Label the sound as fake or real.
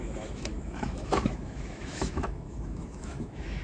fake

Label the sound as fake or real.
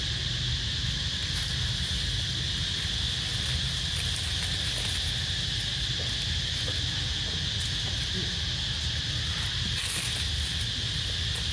real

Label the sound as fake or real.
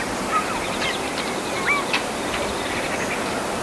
real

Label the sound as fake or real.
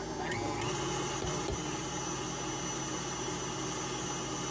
real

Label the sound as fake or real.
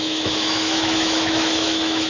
fake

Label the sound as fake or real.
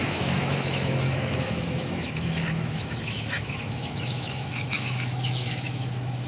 fake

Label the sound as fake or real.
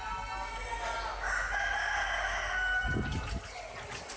real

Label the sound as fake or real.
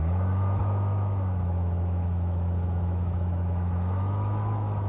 fake